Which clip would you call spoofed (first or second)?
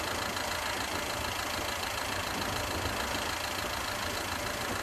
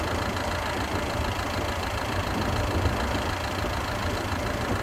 second